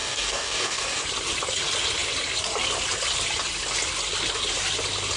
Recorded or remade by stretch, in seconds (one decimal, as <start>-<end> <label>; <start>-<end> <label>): 0.0-1.0 remade; 1.0-5.2 recorded